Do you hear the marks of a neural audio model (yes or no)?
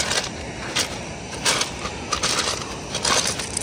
no